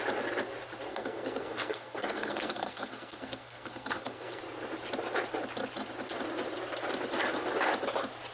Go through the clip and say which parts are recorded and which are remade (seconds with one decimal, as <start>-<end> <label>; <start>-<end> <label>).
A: 0.0-0.9 recorded; 0.9-4.4 remade; 4.4-8.3 recorded